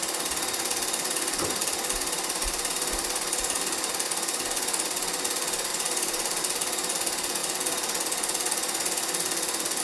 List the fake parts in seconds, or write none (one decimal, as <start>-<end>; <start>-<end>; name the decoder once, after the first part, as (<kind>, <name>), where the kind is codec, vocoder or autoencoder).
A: 2.4-3.9 (vocoder, BigVGAN v2); 5.7-6.4